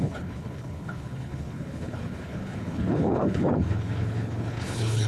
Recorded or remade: remade